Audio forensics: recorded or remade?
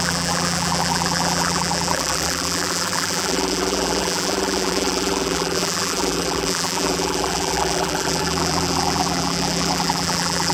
remade